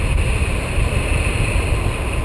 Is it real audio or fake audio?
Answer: real